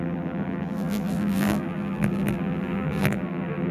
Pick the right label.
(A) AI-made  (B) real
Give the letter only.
A